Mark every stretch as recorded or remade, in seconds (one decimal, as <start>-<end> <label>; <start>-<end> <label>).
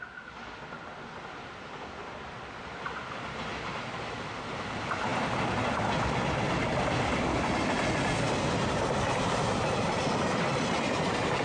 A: 0.0-11.4 recorded